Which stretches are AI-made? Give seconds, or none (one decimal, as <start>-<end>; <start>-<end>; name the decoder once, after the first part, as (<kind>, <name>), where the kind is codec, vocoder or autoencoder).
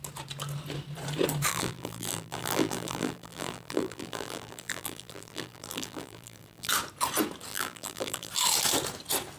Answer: 1.5-6.7 (vocoder, BigVGAN v2); 7.5-8.3